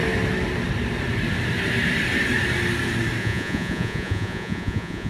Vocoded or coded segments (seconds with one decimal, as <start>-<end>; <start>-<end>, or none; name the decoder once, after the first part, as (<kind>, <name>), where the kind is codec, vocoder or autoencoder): 3.2-5.1 (vocoder, Vocos)